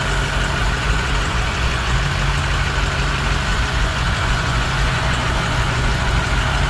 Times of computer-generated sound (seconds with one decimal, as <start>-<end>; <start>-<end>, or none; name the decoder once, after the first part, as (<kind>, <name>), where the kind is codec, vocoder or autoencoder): 0.6-2.0 (vocoder, Vocos); 3.5-6.3